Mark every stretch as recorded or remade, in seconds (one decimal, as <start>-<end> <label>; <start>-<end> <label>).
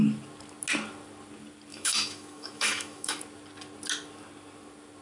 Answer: 0.0-1.7 recorded; 1.7-3.2 remade; 3.2-5.0 recorded